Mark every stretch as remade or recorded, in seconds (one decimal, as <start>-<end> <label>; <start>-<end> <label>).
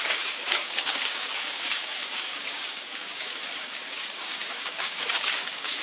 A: 0.0-5.8 remade